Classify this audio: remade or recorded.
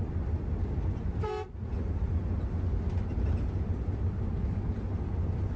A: recorded